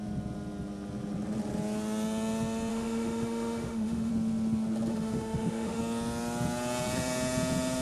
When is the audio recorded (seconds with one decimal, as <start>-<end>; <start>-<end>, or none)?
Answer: 0.0-2.7; 4.1-4.9; 5.8-7.8